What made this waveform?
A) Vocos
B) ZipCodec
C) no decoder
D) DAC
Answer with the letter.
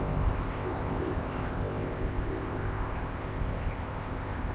B